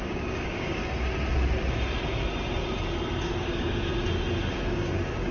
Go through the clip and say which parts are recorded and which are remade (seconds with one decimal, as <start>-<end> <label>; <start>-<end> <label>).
0.0-0.8 remade; 0.8-3.2 recorded; 3.2-3.9 remade; 3.9-4.5 recorded; 4.5-5.3 remade